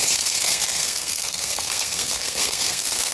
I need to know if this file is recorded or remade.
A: remade